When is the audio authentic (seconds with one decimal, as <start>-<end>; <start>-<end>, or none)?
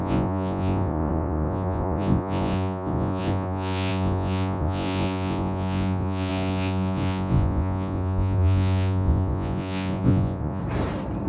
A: 10.6-11.3